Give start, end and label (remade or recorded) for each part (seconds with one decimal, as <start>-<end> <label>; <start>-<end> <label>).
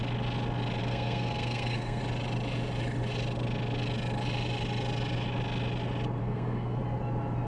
0.0-0.8 recorded; 0.8-2.0 remade; 2.0-6.2 recorded; 6.2-6.8 remade; 6.8-7.5 recorded